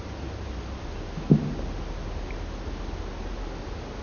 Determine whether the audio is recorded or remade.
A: recorded